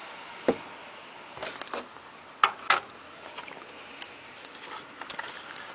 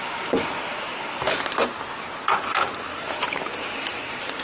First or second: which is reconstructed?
second